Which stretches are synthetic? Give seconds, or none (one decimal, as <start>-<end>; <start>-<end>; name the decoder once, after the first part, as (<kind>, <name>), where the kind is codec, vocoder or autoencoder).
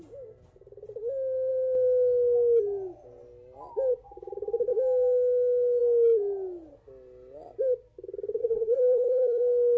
8.4-9.4 (codec, SNAC)